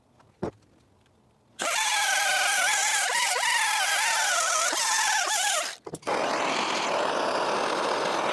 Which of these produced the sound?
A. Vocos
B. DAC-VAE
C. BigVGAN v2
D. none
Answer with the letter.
D